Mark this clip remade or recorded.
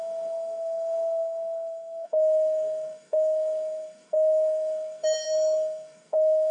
remade